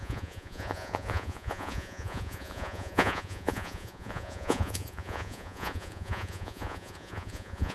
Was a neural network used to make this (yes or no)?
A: yes